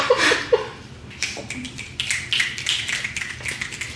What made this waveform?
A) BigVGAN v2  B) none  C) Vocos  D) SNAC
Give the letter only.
B